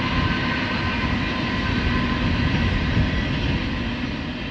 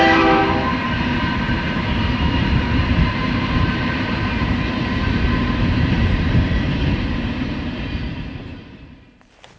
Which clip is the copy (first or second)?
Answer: second